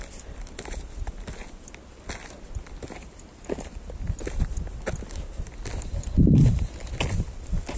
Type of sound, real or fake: real